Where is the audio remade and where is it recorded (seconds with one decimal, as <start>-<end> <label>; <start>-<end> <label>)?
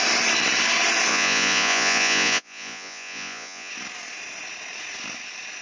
0.0-1.1 recorded; 1.1-3.7 remade; 3.7-5.6 recorded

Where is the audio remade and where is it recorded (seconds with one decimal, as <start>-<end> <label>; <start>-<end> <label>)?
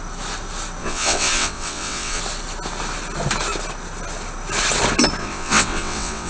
0.0-0.8 recorded; 0.8-2.2 remade; 2.2-5.2 recorded; 5.2-6.3 remade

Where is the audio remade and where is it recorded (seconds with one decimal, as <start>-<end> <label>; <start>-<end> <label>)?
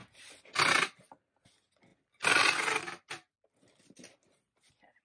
0.0-5.0 recorded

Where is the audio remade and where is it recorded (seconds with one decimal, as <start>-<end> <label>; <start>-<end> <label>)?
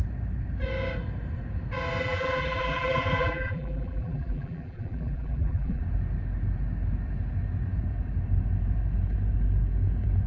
0.0-2.0 recorded; 2.0-5.8 remade; 5.8-10.3 recorded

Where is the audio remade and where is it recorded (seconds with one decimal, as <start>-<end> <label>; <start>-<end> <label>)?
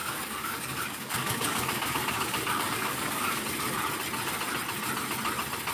0.0-3.4 remade; 3.4-5.7 recorded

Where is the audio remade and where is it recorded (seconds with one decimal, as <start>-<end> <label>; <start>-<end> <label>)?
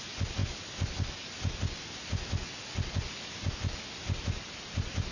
0.0-5.1 recorded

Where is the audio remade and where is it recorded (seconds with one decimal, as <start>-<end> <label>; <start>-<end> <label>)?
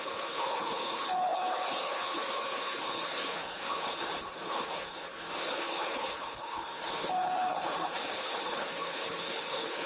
0.0-9.9 remade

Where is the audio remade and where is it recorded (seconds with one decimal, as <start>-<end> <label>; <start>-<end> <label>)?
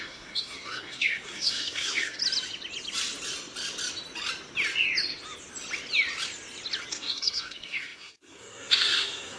0.0-2.2 remade; 2.2-6.9 recorded; 6.9-9.4 remade